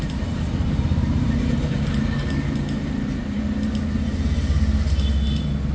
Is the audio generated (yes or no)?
no